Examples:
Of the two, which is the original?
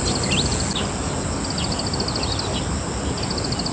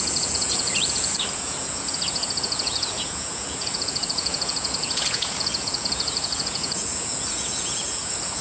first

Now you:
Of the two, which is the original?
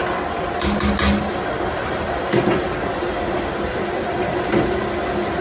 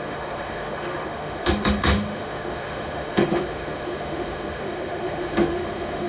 first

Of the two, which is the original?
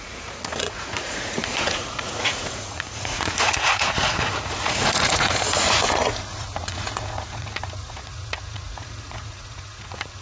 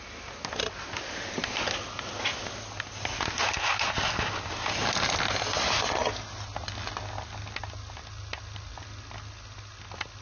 second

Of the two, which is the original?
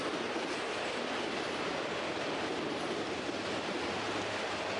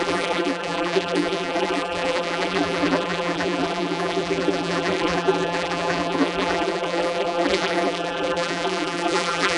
first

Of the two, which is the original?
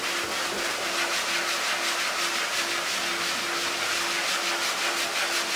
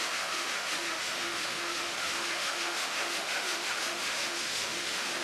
first